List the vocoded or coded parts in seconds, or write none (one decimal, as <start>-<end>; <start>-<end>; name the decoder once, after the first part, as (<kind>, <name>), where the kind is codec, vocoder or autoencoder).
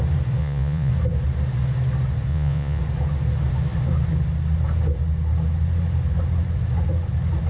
0.4-0.9 (vocoder, Vocos); 2.3-2.8